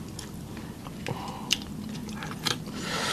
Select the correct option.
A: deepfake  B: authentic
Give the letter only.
B